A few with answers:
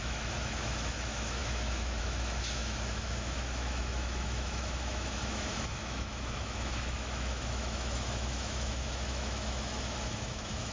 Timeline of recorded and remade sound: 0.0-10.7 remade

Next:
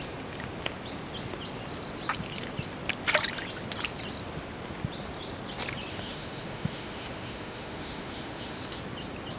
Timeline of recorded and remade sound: 0.0-5.9 recorded; 5.9-8.8 remade; 8.8-9.4 recorded

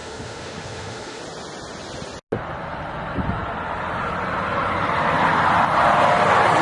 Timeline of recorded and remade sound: 0.0-1.2 remade; 1.2-6.6 recorded

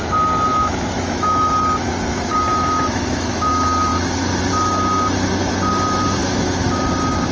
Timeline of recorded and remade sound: 0.0-0.5 recorded; 0.5-1.5 remade; 1.5-2.5 recorded; 2.5-3.5 remade; 3.5-6.2 recorded; 6.2-6.8 remade; 6.8-7.3 recorded